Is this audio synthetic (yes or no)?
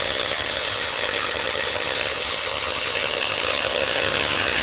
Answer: yes